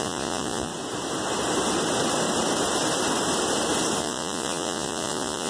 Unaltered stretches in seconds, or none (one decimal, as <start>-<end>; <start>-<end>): 0.7-4.0